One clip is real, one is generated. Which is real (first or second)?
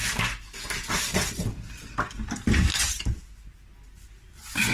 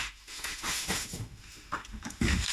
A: first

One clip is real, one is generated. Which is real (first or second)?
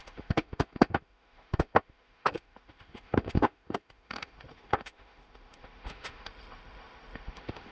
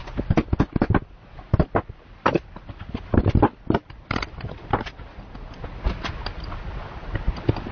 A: second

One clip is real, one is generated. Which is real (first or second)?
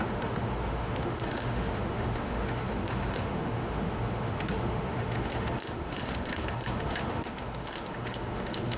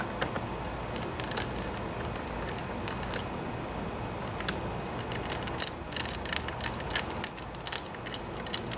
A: second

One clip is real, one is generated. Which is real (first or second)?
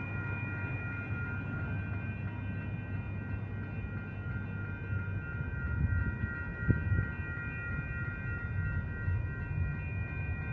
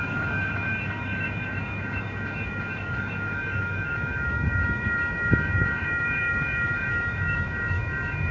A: first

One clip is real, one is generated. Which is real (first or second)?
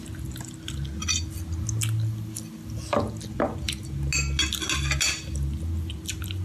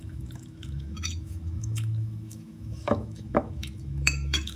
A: first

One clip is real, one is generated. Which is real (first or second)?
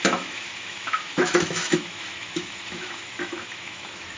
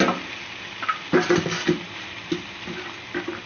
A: second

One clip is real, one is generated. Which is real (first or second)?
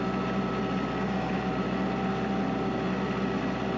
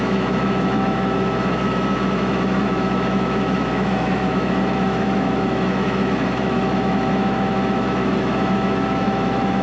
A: first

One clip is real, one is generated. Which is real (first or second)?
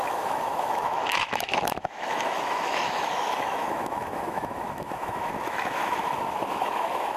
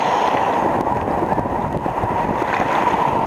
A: second